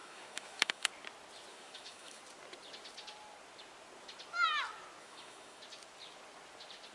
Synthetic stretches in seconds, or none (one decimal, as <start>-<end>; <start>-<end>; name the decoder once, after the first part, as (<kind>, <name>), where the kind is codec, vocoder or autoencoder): 0.0-0.9 (autoencoder, DAC-VAE); 1.5-2.2; 5.0-5.6